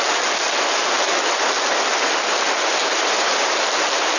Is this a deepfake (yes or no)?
no